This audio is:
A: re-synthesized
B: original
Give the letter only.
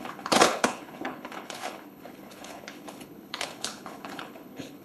A